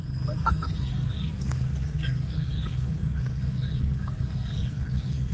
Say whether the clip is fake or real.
fake